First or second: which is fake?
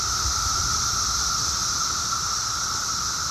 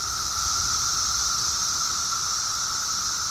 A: second